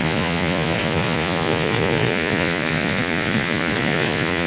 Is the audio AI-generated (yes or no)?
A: yes